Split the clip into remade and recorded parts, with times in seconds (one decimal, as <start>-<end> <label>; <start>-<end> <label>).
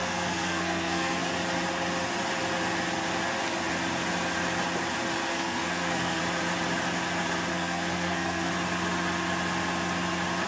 0.0-1.3 remade; 1.3-5.3 recorded; 5.3-6.2 remade; 6.2-7.5 recorded; 7.5-8.5 remade; 8.5-10.5 recorded